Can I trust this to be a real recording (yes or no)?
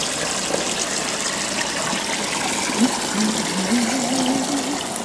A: yes